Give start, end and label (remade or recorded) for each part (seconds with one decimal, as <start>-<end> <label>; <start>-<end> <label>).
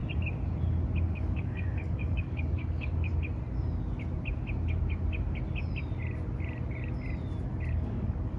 0.0-1.1 recorded; 1.1-3.1 remade; 3.1-7.7 recorded; 7.7-8.4 remade